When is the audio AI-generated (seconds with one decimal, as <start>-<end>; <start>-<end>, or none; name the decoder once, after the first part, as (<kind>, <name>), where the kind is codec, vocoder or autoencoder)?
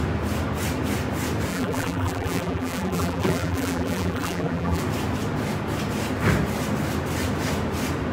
1.5-4.8 (vocoder, BigVGAN v2)